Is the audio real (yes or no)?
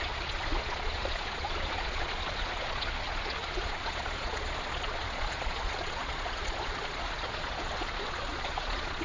no